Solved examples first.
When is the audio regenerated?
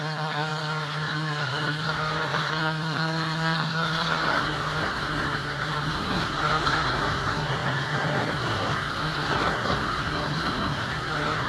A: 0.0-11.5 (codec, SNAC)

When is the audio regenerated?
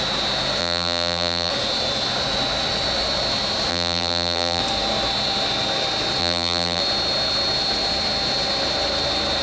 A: 0.6-1.5 (vocoder, BigVGAN v2); 3.7-4.6; 6.2-6.8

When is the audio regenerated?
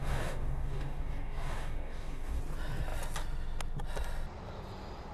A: 0.0-2.4 (codec, DAC)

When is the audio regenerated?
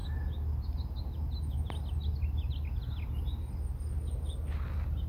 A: none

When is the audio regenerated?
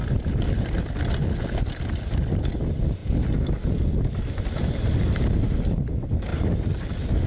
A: none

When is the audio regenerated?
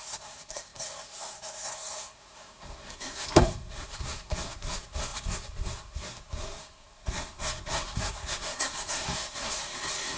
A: 0.0-10.2 (codec, SNAC)